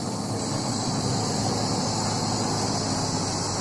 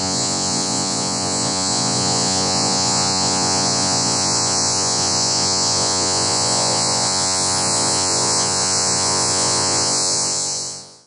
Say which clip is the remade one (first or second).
second